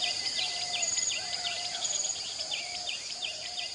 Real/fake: fake